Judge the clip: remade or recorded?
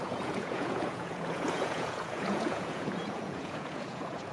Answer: remade